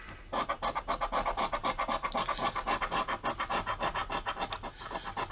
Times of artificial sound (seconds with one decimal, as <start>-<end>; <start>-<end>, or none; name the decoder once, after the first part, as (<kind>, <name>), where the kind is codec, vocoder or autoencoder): none